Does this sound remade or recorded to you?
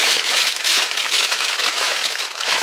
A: remade